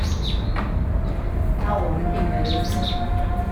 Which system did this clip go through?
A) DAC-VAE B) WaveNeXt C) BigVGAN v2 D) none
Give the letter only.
D